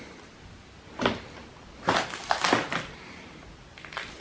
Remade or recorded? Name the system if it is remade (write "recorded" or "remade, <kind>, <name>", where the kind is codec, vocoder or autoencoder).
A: recorded